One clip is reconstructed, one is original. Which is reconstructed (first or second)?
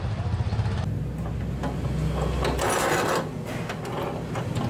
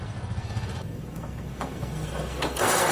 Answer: second